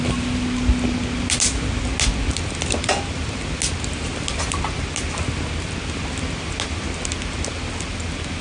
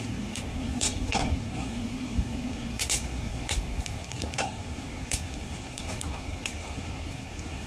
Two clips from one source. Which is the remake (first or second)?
second